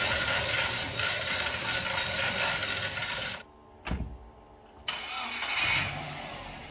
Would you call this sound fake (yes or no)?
no